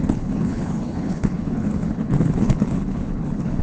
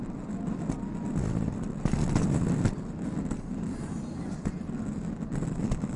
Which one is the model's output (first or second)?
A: first